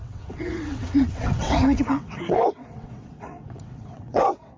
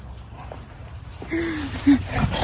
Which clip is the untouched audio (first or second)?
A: second